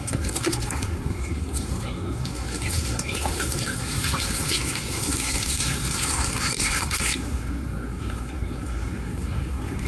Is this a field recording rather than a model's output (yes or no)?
no